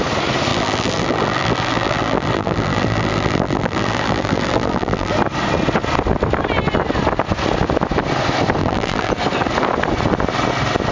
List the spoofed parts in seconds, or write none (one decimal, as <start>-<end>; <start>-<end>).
0.5-5.1; 8.6-9.1